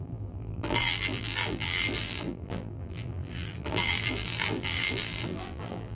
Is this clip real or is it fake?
fake